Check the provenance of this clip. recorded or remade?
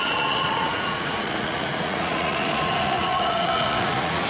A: remade